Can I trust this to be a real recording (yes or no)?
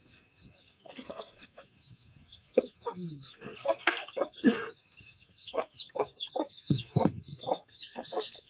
no